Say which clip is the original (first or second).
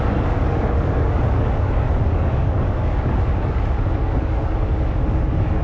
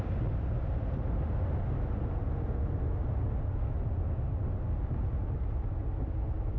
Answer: second